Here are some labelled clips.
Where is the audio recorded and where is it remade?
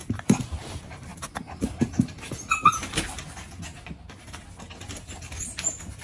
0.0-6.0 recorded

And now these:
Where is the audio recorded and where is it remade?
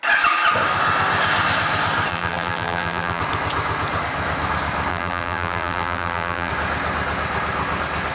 0.0-2.1 recorded; 2.1-3.2 remade; 3.2-4.9 recorded; 4.9-6.5 remade; 6.5-8.1 recorded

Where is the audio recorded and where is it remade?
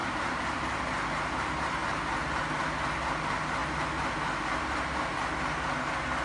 0.0-1.1 remade; 1.1-6.2 recorded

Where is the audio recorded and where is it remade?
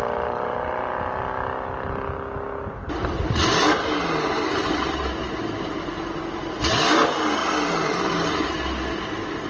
0.0-9.5 recorded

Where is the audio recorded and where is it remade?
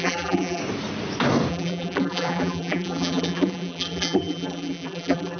0.0-0.6 remade; 0.6-1.5 recorded; 1.5-5.4 remade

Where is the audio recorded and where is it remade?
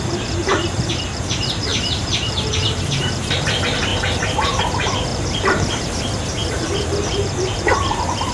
0.0-3.9 remade; 3.9-4.6 recorded; 4.6-8.3 remade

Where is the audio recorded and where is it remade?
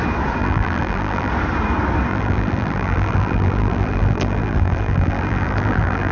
0.0-0.4 recorded; 0.4-1.3 remade; 1.3-2.1 recorded; 2.1-6.1 remade